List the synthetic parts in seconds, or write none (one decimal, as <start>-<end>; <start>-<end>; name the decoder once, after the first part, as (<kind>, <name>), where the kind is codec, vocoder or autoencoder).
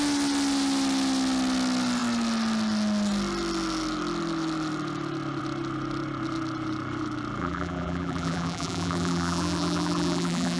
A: 7.4-10.6 (vocoder, BigVGAN v2)